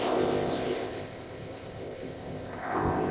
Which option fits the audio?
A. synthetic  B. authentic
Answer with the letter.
A